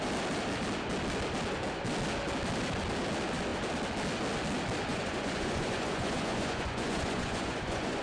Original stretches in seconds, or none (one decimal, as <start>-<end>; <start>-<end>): 0.0-4.9